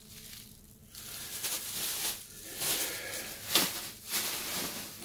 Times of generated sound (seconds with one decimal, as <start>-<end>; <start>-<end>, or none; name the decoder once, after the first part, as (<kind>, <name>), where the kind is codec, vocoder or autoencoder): none